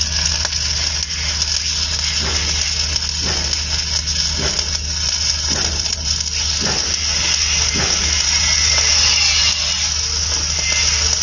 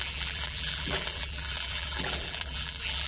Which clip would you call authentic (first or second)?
first